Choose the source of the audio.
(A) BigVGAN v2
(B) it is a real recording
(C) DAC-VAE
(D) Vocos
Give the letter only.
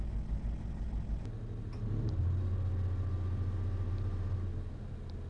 B